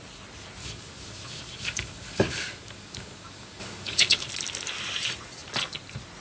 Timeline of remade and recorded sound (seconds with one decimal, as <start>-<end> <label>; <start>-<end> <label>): 0.0-0.6 recorded; 0.6-4.3 remade; 4.3-6.2 recorded